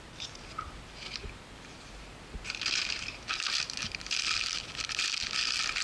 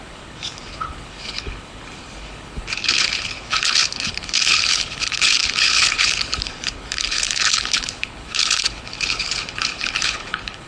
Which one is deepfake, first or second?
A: second